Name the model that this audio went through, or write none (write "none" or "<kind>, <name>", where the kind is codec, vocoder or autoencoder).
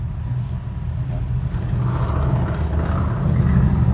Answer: none